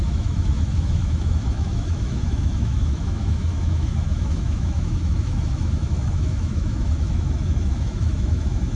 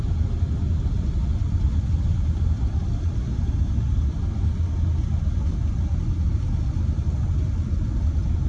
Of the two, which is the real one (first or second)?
second